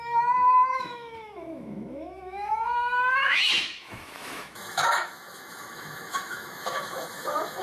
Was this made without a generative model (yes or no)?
no